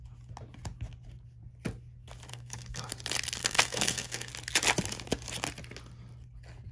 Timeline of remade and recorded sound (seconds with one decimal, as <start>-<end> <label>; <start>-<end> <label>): 0.0-2.3 recorded; 2.3-2.9 remade; 2.9-3.4 recorded; 3.4-4.3 remade; 4.3-6.7 recorded